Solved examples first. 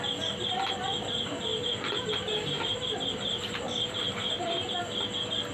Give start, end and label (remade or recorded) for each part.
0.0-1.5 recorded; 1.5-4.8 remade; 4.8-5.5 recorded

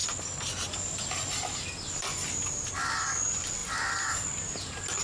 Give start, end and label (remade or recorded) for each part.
0.0-2.1 remade; 2.1-2.8 recorded; 2.8-3.6 remade; 3.6-5.0 recorded

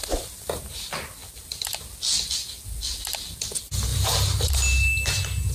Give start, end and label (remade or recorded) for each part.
0.0-0.5 remade; 0.5-3.9 recorded; 3.9-4.5 remade; 4.5-5.5 recorded

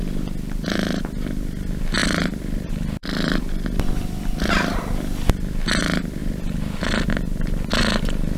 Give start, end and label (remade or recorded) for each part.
0.0-2.0 recorded; 2.0-3.5 remade; 3.5-8.4 recorded

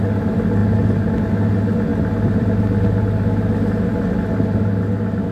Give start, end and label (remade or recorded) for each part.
0.0-1.9 recorded; 1.9-3.0 remade; 3.0-5.3 recorded

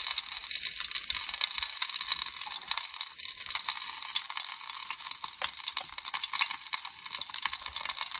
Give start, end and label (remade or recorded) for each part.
0.0-4.8 recorded; 4.8-6.0 remade; 6.0-8.2 recorded

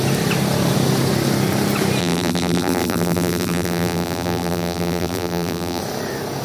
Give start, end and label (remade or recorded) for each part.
0.0-2.0 recorded; 2.0-5.8 remade; 5.8-6.4 recorded

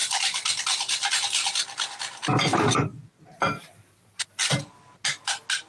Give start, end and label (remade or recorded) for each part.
0.0-0.6 remade; 0.6-2.9 recorded; 2.9-4.5 remade; 4.5-5.7 recorded